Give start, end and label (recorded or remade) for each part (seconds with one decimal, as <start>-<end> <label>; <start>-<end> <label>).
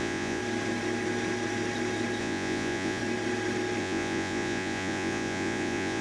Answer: 0.0-0.4 remade; 0.4-2.2 recorded; 2.2-3.0 remade; 3.0-3.8 recorded; 3.8-6.0 remade